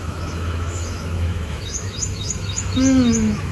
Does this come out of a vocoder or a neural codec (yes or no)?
yes